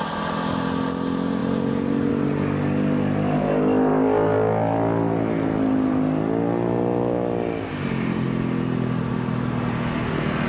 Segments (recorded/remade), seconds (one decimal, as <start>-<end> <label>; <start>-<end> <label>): 0.0-10.5 recorded